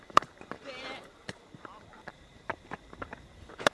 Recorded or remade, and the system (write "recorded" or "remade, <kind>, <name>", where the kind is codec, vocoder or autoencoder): remade, vocoder, BigVGAN v2